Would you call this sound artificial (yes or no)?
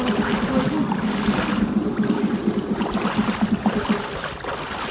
no